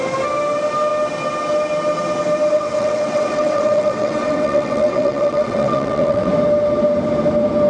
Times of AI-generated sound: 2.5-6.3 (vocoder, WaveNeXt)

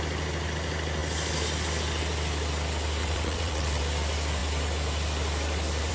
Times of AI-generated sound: 3.0-3.8 (vocoder, WaveNeXt)

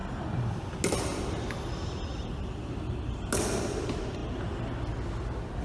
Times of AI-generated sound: none

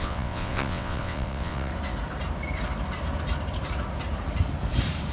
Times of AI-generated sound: 0.0-1.7 (vocoder, WaveNeXt)

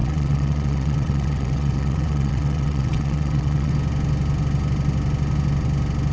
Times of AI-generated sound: 0.0-3.7 (vocoder, WaveNeXt)

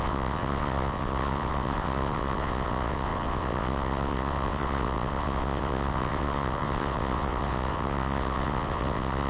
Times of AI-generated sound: 0.0-9.3 (vocoder, WaveNeXt)

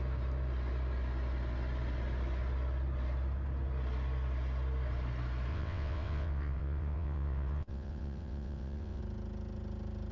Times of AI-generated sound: 5.5-9.0 (vocoder, WaveNeXt)